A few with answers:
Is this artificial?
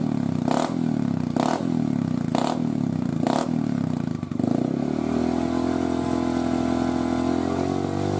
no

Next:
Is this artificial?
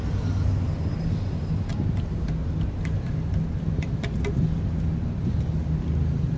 no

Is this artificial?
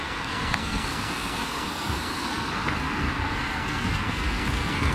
yes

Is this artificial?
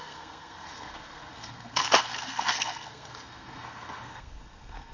yes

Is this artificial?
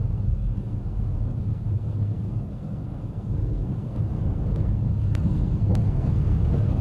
yes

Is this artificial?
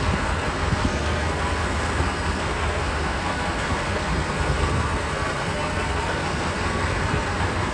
yes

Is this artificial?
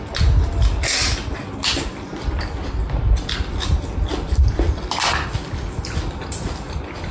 no